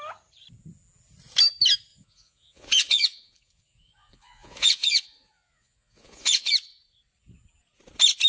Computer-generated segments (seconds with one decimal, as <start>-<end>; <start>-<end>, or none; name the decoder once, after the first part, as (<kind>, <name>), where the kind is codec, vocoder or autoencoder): 1.9-6.5 (vocoder, Vocos)